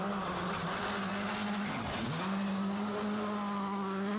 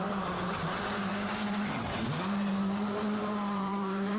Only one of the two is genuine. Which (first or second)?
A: first